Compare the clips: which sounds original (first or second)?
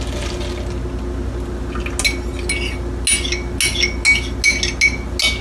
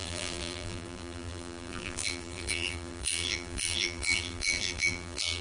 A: first